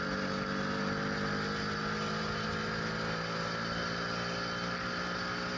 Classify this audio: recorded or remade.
recorded